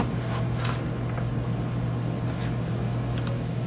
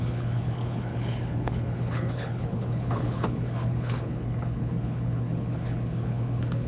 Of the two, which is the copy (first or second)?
second